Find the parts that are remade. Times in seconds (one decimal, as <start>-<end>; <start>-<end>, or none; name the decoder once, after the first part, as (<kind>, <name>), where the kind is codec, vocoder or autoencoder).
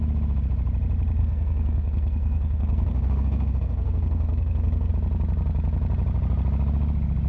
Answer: 1.2-4.9 (codec, SNAC)